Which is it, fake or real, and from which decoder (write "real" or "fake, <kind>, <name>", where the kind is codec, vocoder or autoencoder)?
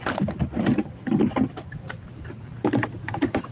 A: real